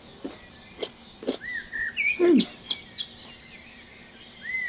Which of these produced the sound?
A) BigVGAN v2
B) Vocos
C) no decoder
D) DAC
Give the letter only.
C